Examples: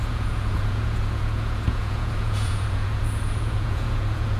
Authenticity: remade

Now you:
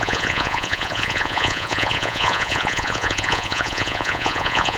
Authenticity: remade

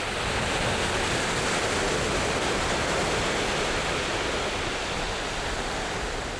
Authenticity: recorded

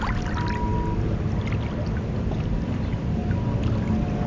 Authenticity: recorded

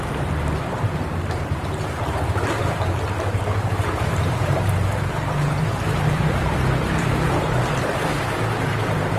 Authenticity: remade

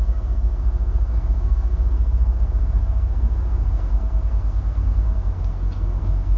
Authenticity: remade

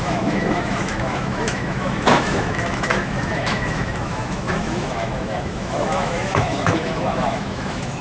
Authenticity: remade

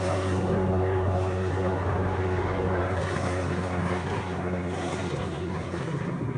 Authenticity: remade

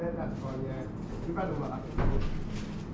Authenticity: recorded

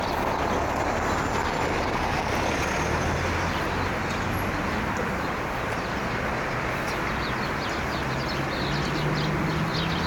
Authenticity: recorded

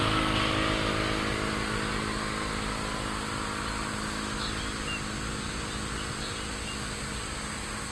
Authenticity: recorded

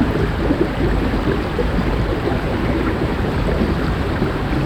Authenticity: remade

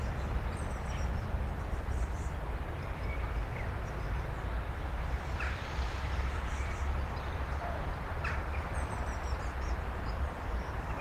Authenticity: remade